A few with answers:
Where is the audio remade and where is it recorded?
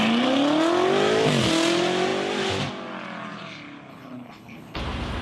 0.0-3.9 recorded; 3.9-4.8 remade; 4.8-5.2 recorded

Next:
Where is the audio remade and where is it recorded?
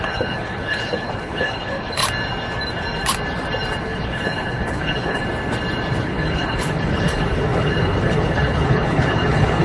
0.0-2.0 remade; 2.0-3.8 recorded; 3.8-5.2 remade; 5.2-6.0 recorded; 6.0-9.6 remade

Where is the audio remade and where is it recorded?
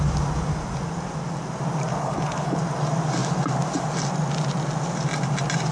0.0-1.9 recorded; 1.9-2.6 remade; 2.6-5.7 recorded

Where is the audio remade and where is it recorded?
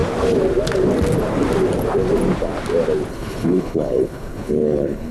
0.0-3.1 recorded; 3.1-5.1 remade